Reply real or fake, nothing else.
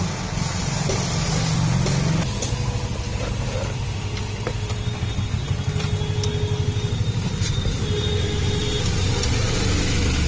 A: real